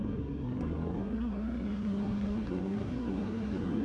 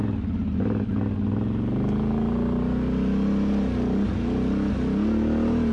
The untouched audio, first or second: second